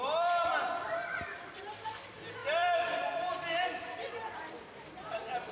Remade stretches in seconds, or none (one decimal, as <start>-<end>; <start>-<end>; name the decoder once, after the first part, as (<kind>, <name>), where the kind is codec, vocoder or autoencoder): none